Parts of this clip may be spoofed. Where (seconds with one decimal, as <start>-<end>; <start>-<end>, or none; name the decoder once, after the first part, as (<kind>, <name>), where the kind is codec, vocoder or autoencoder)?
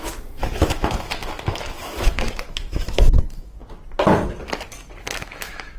0.0-3.6 (autoencoder, DAC-VAE); 5.0-5.8